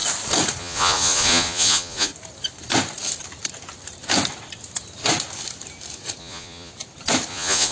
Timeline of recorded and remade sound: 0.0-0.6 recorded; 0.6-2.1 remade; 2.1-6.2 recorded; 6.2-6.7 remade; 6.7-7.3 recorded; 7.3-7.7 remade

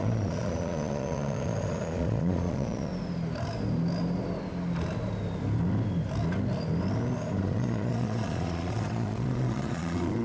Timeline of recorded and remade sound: 0.0-2.9 remade; 2.9-7.4 recorded; 7.4-10.2 remade

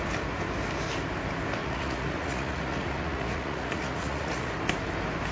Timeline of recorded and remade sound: 0.0-1.6 recorded; 1.6-4.5 remade; 4.5-5.3 recorded

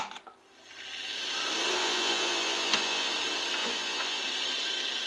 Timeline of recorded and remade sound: 0.0-1.8 recorded; 1.8-3.1 remade; 3.1-3.6 recorded; 3.6-4.2 remade; 4.2-5.1 recorded

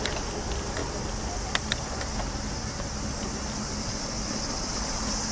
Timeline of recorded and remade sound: 0.0-5.3 recorded

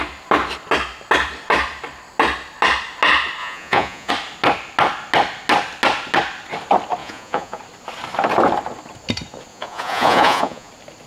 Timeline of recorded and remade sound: 0.0-3.4 recorded; 3.4-4.1 remade; 4.1-7.0 recorded; 7.0-7.6 remade; 7.6-9.5 recorded; 9.5-10.7 remade; 10.7-11.1 recorded

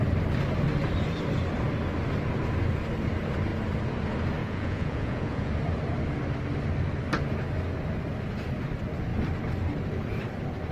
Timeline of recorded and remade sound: 0.0-4.4 recorded; 4.4-5.5 remade; 5.5-10.7 recorded